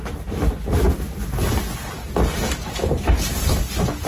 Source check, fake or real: real